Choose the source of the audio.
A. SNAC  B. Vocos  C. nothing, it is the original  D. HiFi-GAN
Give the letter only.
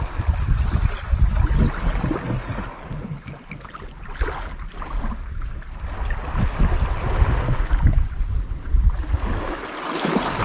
C